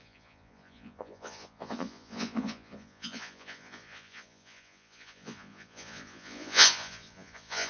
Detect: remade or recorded remade